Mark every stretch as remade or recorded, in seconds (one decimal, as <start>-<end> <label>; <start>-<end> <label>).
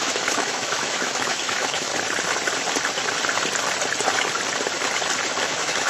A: 0.0-1.9 remade; 1.9-5.4 recorded; 5.4-5.9 remade